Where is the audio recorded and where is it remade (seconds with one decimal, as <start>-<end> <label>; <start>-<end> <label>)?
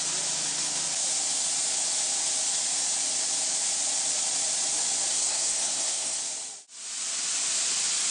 0.0-5.1 recorded; 5.1-6.2 remade; 6.2-8.1 recorded